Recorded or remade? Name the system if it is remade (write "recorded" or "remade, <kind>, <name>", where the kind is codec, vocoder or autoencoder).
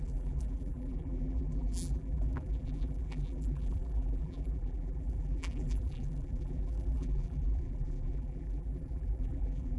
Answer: remade, vocoder, BigVGAN v2